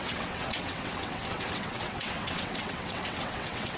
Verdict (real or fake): fake